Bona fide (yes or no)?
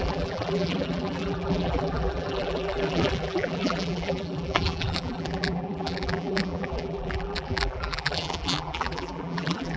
no